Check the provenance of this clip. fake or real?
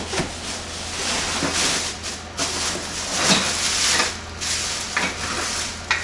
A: real